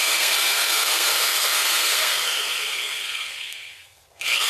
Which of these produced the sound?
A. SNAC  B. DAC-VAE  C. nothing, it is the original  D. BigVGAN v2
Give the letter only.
A